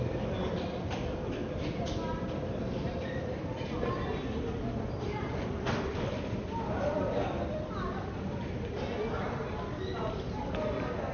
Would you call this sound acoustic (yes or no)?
yes